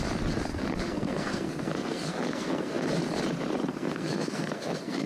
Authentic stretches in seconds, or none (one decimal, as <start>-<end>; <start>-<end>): 0.0-0.5; 2.9-3.7